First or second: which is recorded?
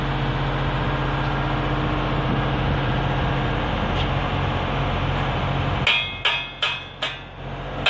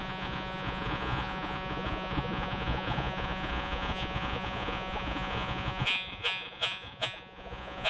first